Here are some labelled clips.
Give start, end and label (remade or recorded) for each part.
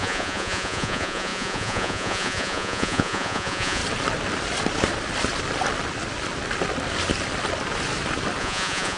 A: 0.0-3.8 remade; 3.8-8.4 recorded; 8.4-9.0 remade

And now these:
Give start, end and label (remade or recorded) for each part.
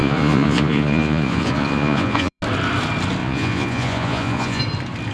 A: 0.0-2.4 remade; 2.4-3.2 recorded; 3.2-4.6 remade; 4.6-5.1 recorded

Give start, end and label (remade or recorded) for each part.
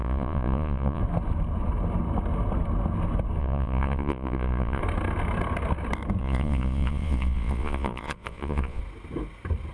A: 0.0-1.0 remade; 1.0-3.4 recorded; 3.4-4.8 remade; 4.8-6.2 recorded; 6.2-8.8 remade; 8.8-9.7 recorded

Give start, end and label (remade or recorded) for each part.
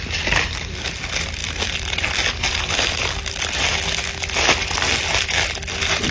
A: 0.0-6.1 recorded